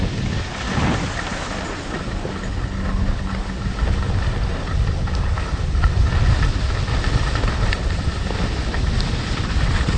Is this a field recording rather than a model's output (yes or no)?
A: yes